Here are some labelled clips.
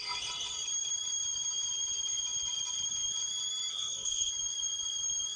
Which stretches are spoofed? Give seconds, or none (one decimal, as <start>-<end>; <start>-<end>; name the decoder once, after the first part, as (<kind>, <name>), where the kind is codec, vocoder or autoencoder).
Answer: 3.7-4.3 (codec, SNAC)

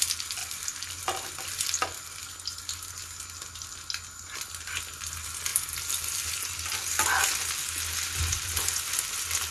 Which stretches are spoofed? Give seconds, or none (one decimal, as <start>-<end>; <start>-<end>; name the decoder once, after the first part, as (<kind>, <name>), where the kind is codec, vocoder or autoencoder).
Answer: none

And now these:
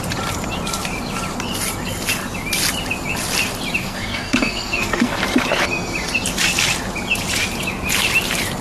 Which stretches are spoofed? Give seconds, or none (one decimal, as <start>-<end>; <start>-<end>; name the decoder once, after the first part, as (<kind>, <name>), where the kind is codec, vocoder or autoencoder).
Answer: 3.8-5.2 (codec, SNAC)